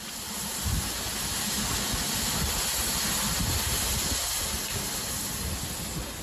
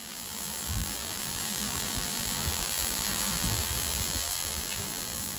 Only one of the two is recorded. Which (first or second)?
first